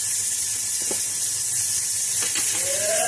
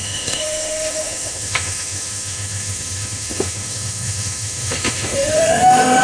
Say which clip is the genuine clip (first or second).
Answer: first